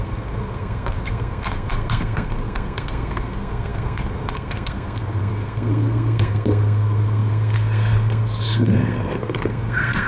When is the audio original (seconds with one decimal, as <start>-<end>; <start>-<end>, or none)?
none